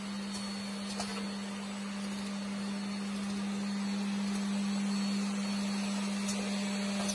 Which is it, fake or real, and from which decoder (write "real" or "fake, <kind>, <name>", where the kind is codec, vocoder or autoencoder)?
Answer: real